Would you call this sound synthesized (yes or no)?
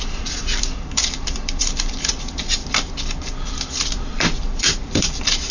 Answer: yes